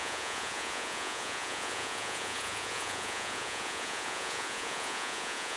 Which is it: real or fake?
fake